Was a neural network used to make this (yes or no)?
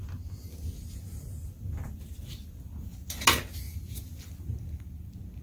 no